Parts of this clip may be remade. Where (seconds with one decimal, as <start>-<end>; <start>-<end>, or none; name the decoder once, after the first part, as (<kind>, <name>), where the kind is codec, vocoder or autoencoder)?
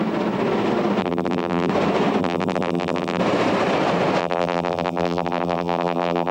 1.0-1.7 (vocoder, BigVGAN v2); 2.2-3.2; 4.2-6.3